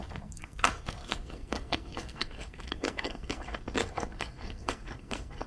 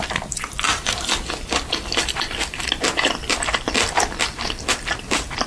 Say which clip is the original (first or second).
second